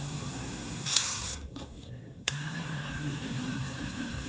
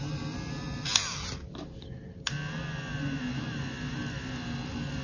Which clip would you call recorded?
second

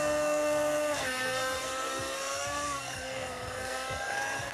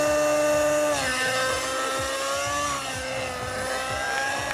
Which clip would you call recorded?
second